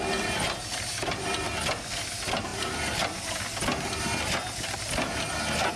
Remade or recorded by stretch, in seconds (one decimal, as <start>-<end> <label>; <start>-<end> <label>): 0.0-5.8 recorded